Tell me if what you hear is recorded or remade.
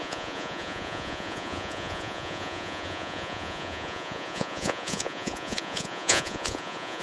remade